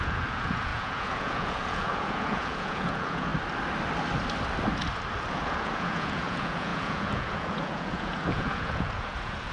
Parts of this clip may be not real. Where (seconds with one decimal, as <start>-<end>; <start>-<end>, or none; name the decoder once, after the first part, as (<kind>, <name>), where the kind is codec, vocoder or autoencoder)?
0.0-3.3 (vocoder, Vocos); 5.3-9.5